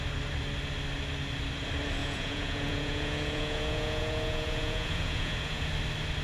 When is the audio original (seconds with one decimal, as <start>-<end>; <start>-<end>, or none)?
0.0-2.0; 5.7-6.2